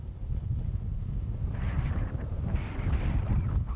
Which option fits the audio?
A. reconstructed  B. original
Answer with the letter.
B